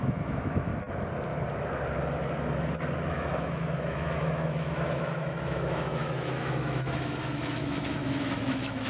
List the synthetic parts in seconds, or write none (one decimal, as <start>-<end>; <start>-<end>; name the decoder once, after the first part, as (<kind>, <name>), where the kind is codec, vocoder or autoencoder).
0.0-0.7 (autoencoder, DAC-VAE); 3.1-8.9